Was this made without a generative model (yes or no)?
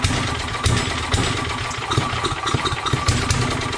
yes